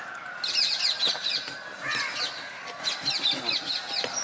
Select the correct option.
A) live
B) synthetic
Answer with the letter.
A